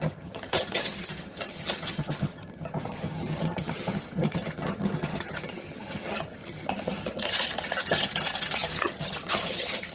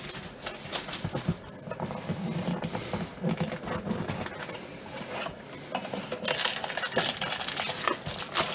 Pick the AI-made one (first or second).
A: first